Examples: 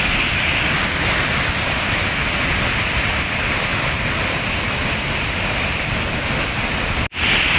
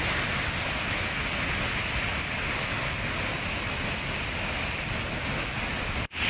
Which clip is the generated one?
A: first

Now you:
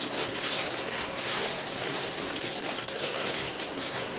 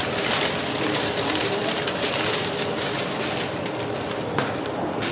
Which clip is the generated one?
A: first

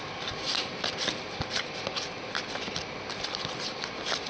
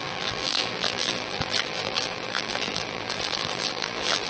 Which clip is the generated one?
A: second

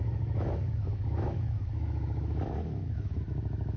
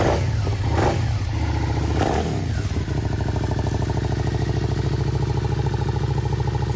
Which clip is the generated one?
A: first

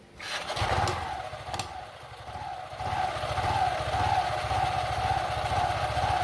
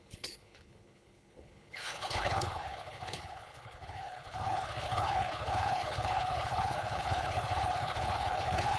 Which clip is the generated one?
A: second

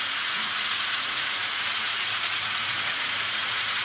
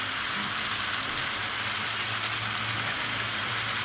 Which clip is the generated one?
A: first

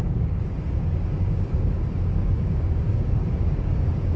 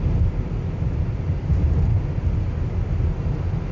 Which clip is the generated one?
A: first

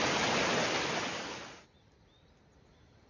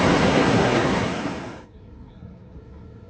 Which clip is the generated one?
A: second